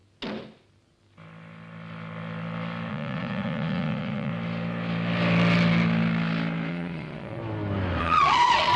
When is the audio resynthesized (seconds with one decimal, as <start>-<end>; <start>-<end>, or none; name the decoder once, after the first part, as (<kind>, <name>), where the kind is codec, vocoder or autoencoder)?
2.9-4.3 (vocoder, Vocos); 6.7-7.4; 8.0-8.8